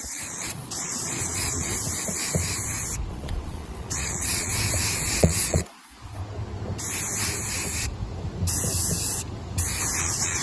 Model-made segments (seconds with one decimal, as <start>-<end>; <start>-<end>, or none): 0.0-1.7; 3.1-4.5; 5.2-6.2; 10.0-10.4